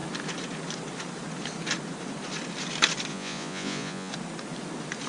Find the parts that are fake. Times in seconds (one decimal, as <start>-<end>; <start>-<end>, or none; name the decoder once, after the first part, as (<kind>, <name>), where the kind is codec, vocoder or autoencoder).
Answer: 3.1-4.1 (vocoder, Vocos)